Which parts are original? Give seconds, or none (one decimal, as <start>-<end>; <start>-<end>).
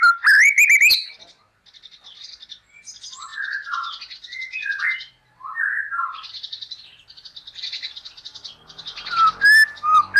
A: 0.0-3.3; 4.8-10.2